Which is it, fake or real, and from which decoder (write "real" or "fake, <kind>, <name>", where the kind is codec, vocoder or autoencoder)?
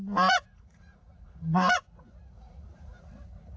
fake, vocoder, Vocos